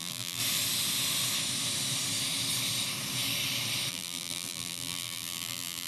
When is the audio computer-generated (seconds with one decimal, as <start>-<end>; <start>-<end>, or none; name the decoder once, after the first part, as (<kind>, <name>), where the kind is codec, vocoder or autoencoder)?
0.0-0.4 (vocoder, BigVGAN v2); 3.9-5.9